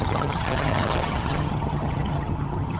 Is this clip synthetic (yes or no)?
yes